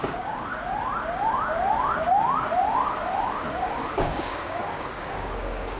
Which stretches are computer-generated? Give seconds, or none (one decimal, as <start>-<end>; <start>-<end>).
0.0-0.5; 4.0-5.8